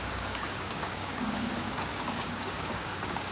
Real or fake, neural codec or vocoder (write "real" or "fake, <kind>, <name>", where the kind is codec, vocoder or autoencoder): fake, codec, DAC